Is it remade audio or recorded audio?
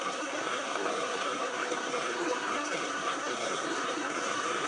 remade